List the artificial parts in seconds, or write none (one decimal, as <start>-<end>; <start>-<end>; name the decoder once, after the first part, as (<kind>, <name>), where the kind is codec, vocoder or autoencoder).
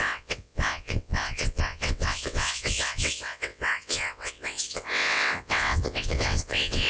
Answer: 0.0-6.9 (vocoder, WaveNeXt)